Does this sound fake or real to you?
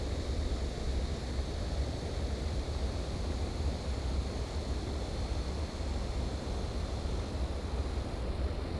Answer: real